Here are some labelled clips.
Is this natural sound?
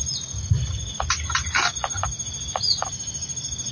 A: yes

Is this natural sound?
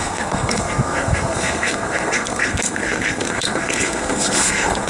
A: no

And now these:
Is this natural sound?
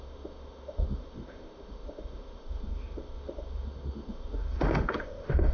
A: no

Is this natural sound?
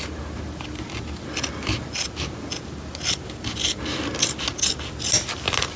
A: yes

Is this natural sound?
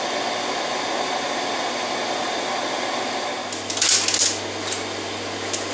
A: yes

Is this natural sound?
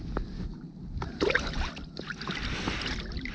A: yes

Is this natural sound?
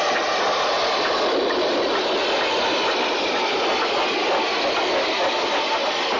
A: yes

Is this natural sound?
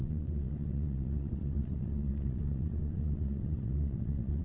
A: no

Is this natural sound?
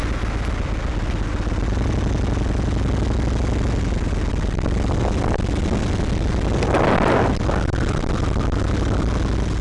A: yes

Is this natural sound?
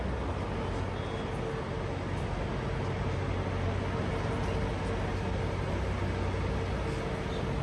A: yes